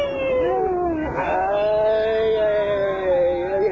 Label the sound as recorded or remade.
recorded